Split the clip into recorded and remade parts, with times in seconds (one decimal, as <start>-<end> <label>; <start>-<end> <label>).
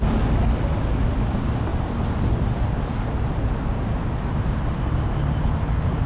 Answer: 0.0-6.1 recorded